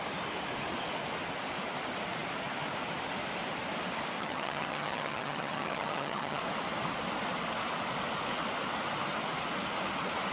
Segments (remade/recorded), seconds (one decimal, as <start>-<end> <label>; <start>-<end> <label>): 0.0-4.2 recorded; 4.2-6.4 remade; 6.4-10.3 recorded